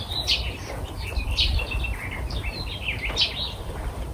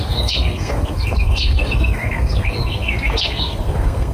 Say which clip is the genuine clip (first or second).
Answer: first